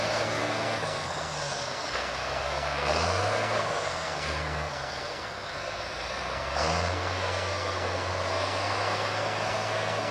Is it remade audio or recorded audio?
remade